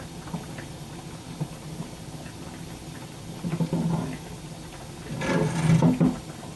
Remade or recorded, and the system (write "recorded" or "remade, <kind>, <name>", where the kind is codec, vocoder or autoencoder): recorded